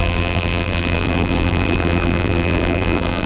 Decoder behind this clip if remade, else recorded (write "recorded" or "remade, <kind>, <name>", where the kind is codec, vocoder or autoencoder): remade, vocoder, BigVGAN v2